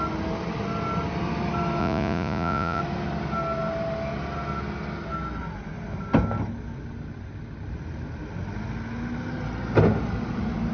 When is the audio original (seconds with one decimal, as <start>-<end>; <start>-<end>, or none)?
0.0-1.8; 2.8-10.7